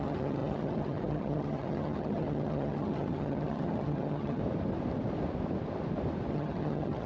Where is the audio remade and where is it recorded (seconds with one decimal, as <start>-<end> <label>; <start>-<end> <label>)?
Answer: 0.0-4.4 remade; 4.4-6.3 recorded; 6.3-7.1 remade